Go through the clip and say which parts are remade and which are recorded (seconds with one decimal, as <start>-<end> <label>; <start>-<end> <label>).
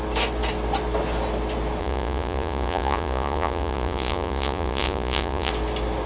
0.0-1.8 recorded; 1.8-5.5 remade; 5.5-6.1 recorded